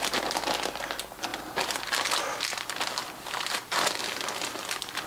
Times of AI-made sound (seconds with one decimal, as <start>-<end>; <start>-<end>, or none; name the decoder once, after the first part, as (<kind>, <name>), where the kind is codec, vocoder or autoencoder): 1.3-2.2 (vocoder, BigVGAN v2); 3.0-4.0